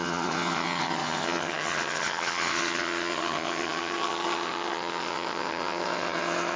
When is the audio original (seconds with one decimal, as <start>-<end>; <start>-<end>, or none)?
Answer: none